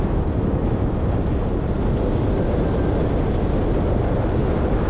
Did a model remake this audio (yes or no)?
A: no